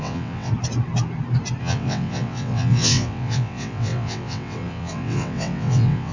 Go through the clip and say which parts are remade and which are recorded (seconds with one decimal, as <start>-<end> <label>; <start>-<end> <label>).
0.0-0.5 remade; 0.5-1.6 recorded; 1.6-6.1 remade